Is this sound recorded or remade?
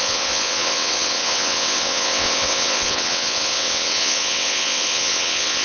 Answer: remade